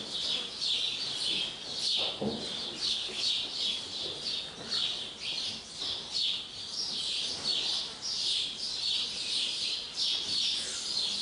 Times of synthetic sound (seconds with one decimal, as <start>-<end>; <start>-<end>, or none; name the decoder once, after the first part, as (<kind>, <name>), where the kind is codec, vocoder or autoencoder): 2.8-3.3 (codec, HILCodec)